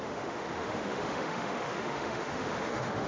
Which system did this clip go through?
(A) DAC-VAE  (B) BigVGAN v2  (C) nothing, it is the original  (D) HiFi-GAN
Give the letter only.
A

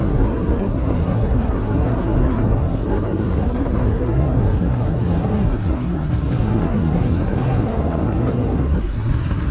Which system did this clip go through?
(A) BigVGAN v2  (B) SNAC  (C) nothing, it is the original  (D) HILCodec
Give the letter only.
B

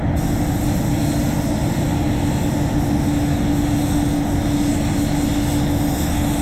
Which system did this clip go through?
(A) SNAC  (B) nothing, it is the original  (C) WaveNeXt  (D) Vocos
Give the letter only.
B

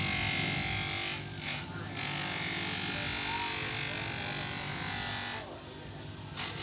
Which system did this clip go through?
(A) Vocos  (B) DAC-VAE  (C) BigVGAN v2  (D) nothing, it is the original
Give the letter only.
D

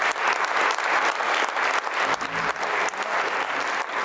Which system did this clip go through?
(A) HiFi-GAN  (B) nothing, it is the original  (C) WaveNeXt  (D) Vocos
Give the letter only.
B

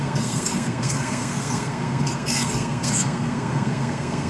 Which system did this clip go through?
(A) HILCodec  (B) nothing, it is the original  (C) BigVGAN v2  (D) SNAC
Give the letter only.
D